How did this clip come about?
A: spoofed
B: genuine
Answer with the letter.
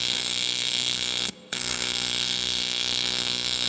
A